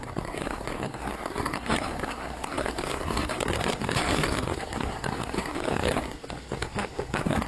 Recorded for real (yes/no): no